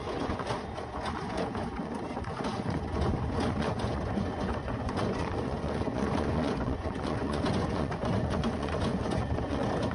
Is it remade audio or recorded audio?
remade